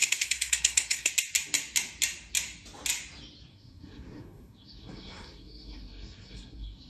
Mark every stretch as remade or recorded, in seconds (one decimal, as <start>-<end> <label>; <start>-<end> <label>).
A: 0.0-1.1 remade; 1.1-3.5 recorded; 3.5-6.9 remade